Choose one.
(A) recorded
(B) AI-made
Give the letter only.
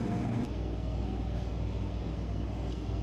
B